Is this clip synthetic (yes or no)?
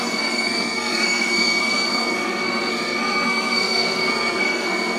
yes